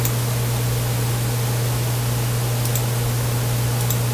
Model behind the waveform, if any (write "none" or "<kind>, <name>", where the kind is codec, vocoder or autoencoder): none